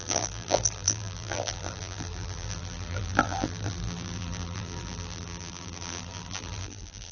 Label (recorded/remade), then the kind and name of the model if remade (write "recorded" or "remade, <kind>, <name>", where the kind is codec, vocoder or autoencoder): remade, vocoder, BigVGAN v2